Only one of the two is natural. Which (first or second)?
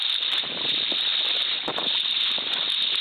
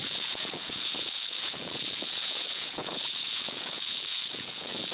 first